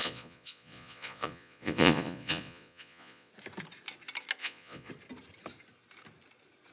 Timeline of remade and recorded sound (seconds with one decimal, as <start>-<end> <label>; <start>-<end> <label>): 0.0-3.3 remade; 3.3-4.4 recorded; 4.4-4.9 remade; 4.9-6.7 recorded